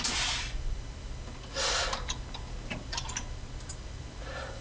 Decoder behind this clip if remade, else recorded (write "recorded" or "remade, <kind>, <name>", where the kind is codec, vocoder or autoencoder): recorded